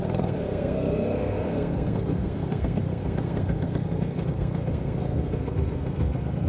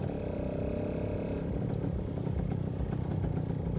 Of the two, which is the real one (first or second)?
second